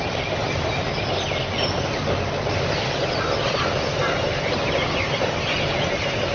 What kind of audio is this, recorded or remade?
recorded